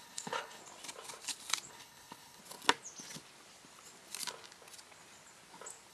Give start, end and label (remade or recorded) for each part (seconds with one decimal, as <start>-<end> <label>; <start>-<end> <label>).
0.0-0.6 remade; 0.6-1.7 recorded; 1.7-2.4 remade; 2.4-5.9 recorded